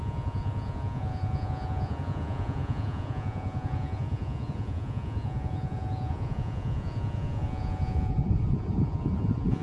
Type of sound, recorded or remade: remade